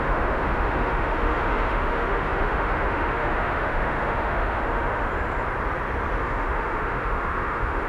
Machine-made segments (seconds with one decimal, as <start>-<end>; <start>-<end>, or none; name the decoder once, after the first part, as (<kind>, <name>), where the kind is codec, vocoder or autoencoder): 0.0-5.1 (autoencoder, DAC-VAE); 6.2-7.9